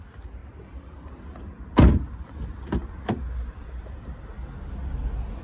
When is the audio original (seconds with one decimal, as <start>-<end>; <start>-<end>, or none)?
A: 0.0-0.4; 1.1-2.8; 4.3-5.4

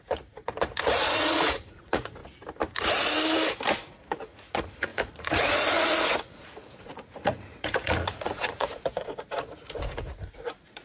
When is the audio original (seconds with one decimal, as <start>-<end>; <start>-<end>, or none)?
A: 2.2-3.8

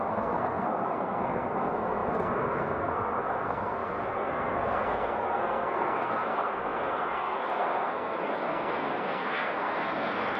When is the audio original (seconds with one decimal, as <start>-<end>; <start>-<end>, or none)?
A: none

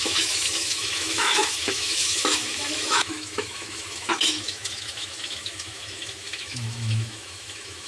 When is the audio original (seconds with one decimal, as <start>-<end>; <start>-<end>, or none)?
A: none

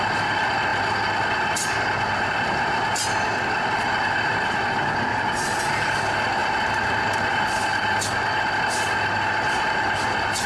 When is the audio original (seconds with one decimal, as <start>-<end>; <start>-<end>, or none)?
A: 0.0-10.5